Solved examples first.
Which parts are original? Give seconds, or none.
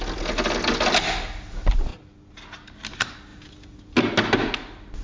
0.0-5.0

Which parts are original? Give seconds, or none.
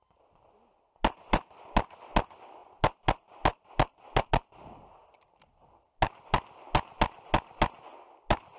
0.0-8.6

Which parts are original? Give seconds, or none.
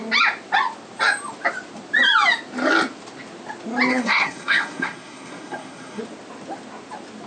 0.0-3.9; 6.0-7.3